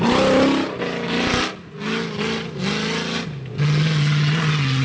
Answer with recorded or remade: recorded